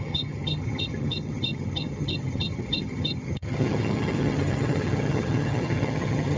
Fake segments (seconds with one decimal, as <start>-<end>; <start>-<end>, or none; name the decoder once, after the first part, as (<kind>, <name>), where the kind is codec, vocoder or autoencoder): 0.0-6.4 (vocoder, HiFi-GAN)